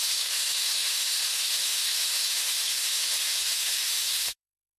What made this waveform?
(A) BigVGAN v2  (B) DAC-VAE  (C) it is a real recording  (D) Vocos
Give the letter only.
B